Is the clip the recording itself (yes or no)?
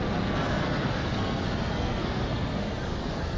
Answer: no